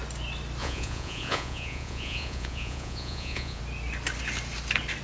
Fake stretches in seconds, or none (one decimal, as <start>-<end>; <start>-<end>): 0.6-3.6